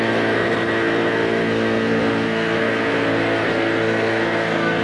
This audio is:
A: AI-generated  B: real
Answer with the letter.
A